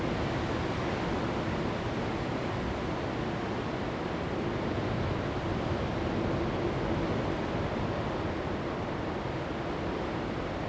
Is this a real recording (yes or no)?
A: yes